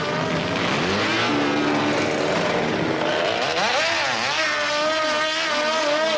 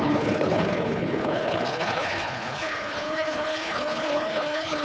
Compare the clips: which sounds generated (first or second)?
second